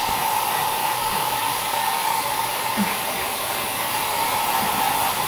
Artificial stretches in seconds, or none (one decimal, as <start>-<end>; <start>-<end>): 0.8-4.0

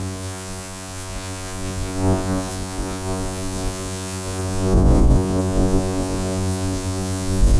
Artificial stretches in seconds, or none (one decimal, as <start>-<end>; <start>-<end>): 0.0-7.6

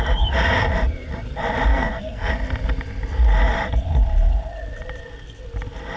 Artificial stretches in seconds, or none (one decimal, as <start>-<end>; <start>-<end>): 1.7-2.3

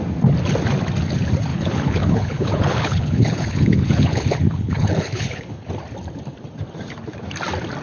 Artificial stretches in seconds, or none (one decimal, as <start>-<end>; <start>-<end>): 1.5-5.7

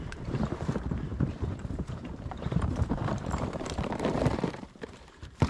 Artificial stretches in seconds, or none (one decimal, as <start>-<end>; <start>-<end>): 0.0-5.5